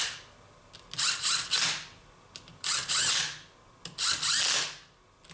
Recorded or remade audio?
recorded